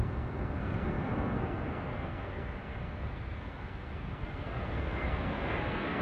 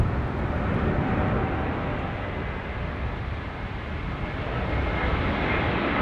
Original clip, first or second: second